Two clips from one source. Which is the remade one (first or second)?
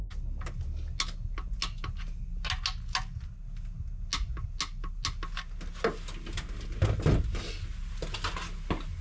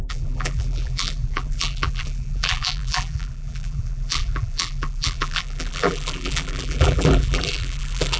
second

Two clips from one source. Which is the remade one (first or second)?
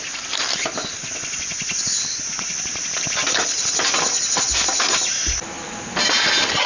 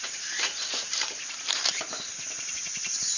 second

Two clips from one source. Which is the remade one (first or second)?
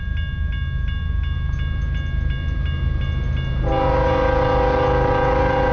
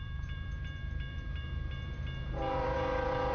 second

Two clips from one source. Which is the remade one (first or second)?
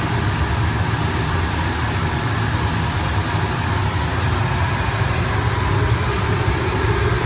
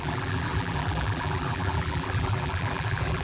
second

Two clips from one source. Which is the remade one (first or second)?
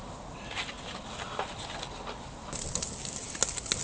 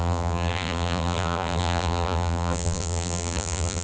second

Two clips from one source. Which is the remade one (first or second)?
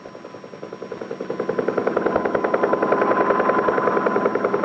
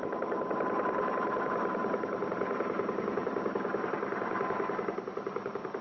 second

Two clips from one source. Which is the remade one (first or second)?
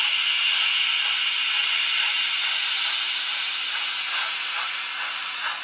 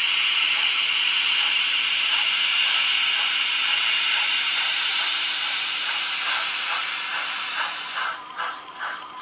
second